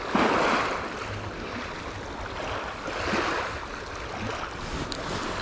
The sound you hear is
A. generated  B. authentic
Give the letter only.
B